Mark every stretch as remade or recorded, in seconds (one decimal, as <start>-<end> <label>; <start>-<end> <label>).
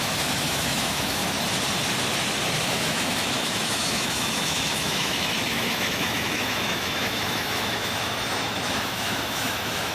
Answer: 0.0-1.2 remade; 1.2-2.6 recorded; 2.6-9.9 remade